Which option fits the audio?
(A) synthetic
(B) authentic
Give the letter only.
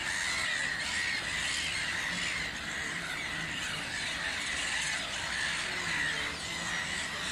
B